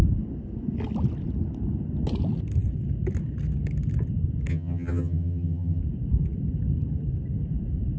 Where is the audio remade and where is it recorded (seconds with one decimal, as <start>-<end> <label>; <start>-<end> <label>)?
0.0-4.5 recorded; 4.5-5.8 remade; 5.8-8.0 recorded